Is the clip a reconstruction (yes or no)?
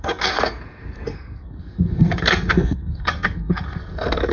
yes